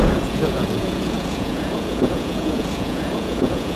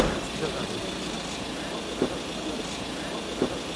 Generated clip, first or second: first